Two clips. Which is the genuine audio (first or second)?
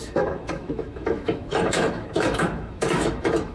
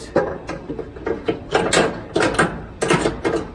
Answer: second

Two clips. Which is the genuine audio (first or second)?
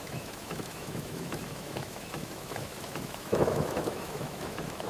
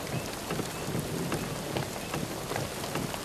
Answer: second